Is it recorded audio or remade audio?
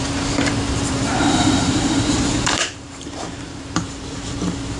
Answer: remade